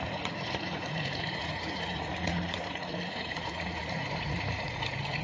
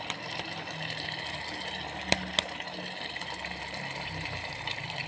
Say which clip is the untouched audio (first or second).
second